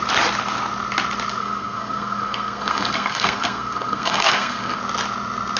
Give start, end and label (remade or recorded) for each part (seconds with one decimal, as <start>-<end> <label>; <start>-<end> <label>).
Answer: 0.0-1.4 recorded; 1.4-4.8 remade; 4.8-5.6 recorded